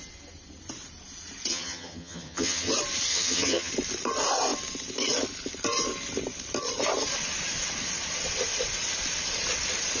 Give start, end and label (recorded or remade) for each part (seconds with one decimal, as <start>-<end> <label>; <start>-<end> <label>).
0.0-1.5 recorded; 1.5-2.7 remade; 2.7-3.1 recorded; 3.1-3.7 remade; 3.7-10.0 recorded